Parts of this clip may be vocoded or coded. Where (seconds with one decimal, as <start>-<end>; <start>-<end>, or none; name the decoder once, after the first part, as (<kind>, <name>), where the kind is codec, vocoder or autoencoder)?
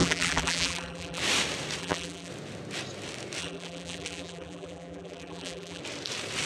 0.0-1.2 (vocoder, BigVGAN v2); 1.8-2.3; 3.4-5.8